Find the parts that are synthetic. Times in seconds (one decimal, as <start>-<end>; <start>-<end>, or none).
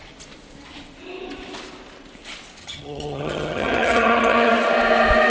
2.6-4.5